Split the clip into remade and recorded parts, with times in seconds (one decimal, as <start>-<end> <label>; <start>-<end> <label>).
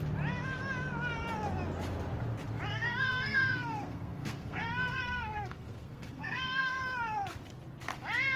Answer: 0.0-2.7 recorded; 2.7-6.8 remade; 6.8-8.4 recorded